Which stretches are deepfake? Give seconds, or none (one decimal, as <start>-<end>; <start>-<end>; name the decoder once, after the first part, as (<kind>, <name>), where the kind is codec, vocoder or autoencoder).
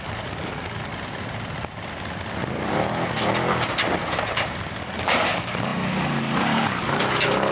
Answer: 0.0-0.9 (codec, DAC); 4.8-7.5